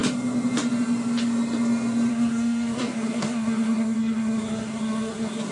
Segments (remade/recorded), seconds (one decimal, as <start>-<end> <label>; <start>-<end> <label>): 0.0-2.1 recorded; 2.1-5.5 remade